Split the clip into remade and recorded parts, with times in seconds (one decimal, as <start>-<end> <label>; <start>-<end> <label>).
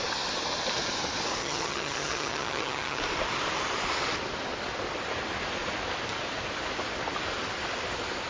0.0-1.4 recorded; 1.4-3.0 remade; 3.0-8.3 recorded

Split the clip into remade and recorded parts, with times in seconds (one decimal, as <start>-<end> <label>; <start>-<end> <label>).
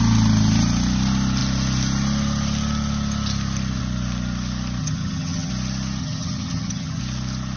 0.0-4.8 recorded; 4.8-5.5 remade; 5.5-6.0 recorded; 6.0-7.0 remade; 7.0-7.6 recorded